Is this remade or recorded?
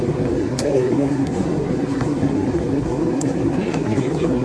remade